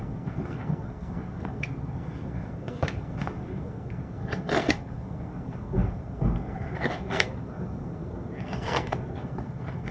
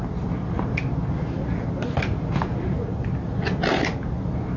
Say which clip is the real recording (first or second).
second